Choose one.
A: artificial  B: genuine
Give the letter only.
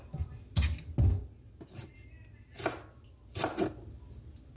B